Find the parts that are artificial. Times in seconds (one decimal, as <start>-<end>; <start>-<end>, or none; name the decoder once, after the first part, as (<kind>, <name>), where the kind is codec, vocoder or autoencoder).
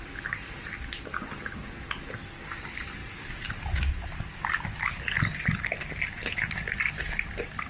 none